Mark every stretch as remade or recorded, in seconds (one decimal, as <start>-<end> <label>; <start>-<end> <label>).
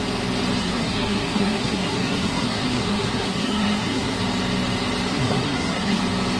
0.0-0.6 recorded; 0.6-4.2 remade; 4.2-5.1 recorded; 5.1-6.0 remade; 6.0-6.4 recorded